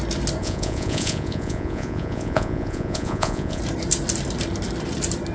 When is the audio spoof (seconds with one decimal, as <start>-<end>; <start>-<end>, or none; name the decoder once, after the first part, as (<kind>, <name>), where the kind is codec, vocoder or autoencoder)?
0.4-3.6 (vocoder, Vocos)